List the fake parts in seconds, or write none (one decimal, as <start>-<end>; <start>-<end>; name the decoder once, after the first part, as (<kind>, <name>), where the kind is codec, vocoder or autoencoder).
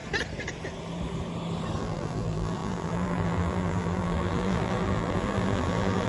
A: 1.8-6.1 (vocoder, BigVGAN v2)